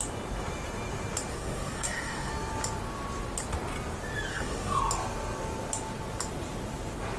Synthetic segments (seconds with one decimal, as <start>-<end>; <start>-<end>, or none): 1.3-2.3; 4.3-4.8